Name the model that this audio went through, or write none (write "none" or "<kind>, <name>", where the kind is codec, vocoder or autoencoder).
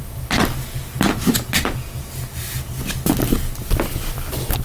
none